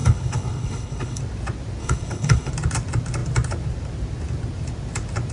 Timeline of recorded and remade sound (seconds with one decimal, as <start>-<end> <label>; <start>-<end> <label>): 0.0-1.2 remade; 1.2-1.8 recorded; 1.8-2.5 remade; 2.5-5.3 recorded